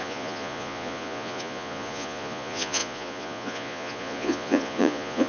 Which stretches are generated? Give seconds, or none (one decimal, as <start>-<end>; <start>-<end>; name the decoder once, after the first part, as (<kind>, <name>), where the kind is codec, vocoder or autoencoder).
0.0-5.3 (vocoder, Vocos)